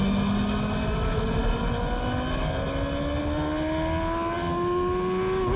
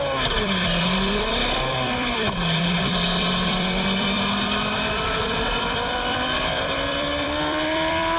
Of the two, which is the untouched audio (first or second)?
first